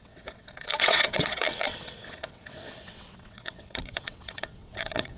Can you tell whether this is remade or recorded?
remade